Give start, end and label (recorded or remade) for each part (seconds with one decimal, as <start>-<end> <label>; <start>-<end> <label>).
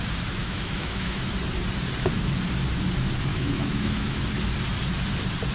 0.0-0.4 recorded; 0.4-1.3 remade; 1.3-3.3 recorded; 3.3-4.2 remade; 4.2-5.5 recorded